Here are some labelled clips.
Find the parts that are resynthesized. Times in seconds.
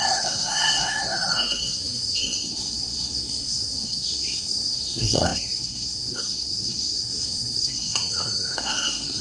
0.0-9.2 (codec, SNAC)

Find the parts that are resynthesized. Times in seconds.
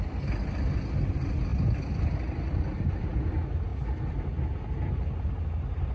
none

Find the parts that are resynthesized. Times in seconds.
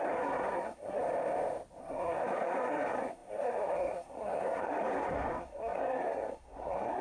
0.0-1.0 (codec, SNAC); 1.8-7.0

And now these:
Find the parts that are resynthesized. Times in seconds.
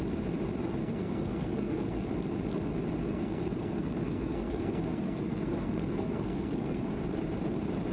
0.8-2.1 (codec, SNAC); 3.0-6.9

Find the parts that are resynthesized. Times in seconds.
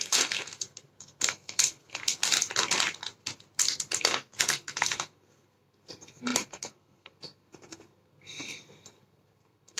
0.0-2.2 (codec, SNAC); 4.0-9.8